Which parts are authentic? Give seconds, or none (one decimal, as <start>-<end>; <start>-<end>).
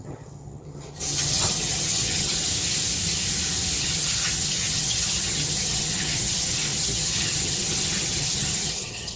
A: 2.5-3.8